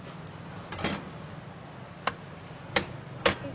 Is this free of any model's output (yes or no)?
yes